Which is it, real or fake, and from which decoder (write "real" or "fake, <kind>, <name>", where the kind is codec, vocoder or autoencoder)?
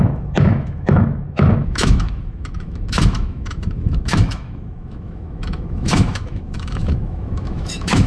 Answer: fake, autoencoder, DAC-VAE